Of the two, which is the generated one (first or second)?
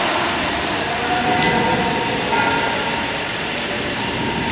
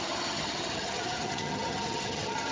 second